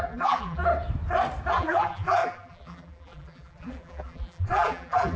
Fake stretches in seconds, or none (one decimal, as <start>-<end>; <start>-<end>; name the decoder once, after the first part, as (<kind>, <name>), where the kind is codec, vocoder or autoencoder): 0.0-0.6 (vocoder, BigVGAN v2); 1.5-5.2